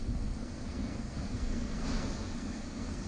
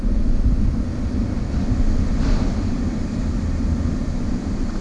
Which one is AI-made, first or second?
first